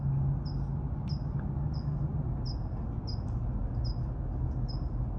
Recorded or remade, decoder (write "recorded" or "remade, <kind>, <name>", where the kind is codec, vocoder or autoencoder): recorded